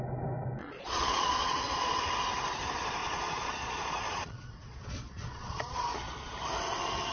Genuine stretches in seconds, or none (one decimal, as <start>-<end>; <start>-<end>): 0.0-0.6; 2.0-3.0; 6.3-7.1